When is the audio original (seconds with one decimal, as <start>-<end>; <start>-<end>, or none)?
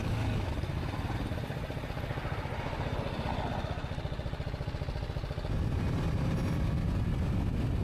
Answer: 0.5-7.8